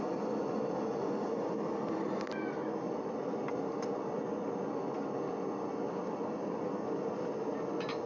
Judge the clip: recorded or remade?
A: recorded